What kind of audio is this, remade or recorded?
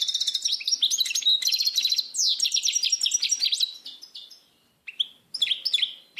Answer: recorded